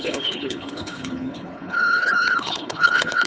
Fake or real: fake